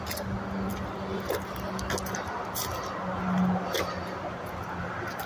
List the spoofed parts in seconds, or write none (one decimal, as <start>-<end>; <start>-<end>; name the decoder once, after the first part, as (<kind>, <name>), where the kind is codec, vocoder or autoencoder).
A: none